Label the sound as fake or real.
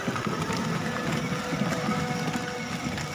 real